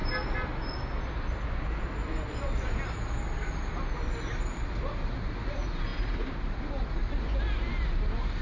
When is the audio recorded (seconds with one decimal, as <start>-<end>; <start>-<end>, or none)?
0.0-8.4